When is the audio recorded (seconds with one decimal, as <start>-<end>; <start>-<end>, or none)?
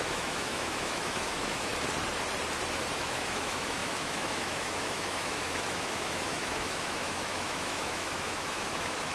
1.7-3.0